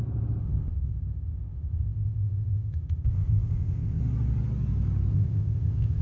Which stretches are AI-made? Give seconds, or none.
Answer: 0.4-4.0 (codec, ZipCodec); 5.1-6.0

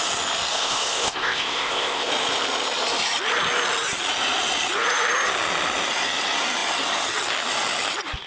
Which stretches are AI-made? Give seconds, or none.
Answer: 0.5-2.1 (codec, ZipCodec)

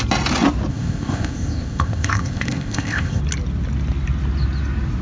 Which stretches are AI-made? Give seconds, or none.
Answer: 0.7-3.2 (codec, ZipCodec)

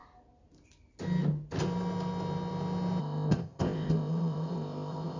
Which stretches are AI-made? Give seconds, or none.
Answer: 3.0-5.2 (codec, ZipCodec)

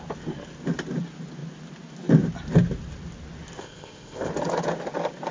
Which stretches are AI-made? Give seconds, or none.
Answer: 3.6-4.3 (codec, ZipCodec)

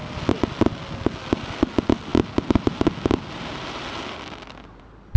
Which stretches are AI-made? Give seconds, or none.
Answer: none

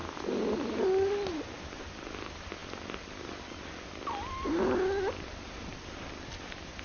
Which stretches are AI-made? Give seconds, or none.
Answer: none

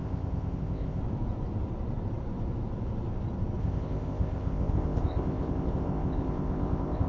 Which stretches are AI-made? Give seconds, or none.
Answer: 0.0-1.0 (codec, ZipCodec); 3.6-7.1